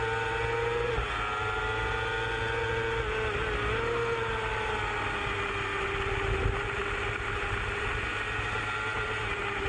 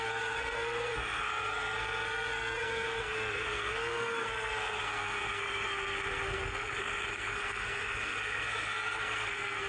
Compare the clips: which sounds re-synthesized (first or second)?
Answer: second